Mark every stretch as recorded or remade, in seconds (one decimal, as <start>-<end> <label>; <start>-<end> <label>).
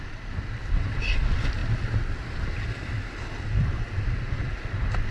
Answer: 0.0-5.1 recorded